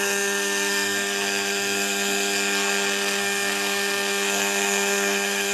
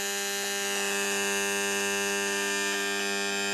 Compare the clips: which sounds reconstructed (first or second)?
first